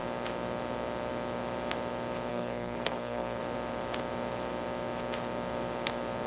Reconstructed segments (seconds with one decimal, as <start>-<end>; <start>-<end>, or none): 2.3-3.4